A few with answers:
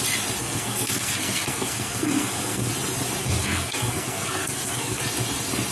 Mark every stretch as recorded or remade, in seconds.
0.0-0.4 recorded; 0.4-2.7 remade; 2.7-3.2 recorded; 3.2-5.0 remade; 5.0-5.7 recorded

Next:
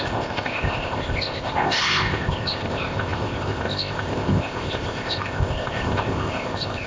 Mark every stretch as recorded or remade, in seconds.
0.0-6.9 remade

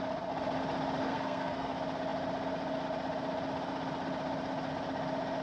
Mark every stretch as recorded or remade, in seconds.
0.0-1.0 recorded; 1.0-1.7 remade; 1.7-5.4 recorded

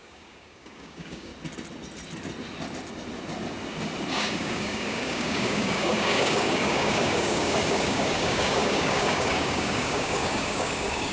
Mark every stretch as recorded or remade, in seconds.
0.0-1.3 remade; 1.3-4.1 recorded; 4.1-11.1 remade

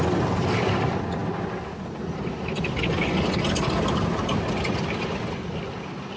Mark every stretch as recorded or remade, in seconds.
0.0-6.2 recorded

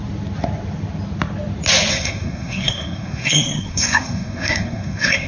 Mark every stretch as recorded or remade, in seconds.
0.0-1.9 recorded; 1.9-5.3 remade